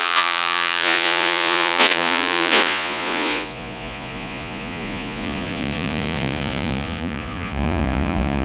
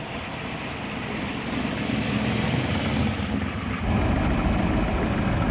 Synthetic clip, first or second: first